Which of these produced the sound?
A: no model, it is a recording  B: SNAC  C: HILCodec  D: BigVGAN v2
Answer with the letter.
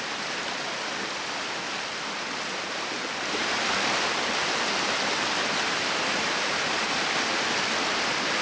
A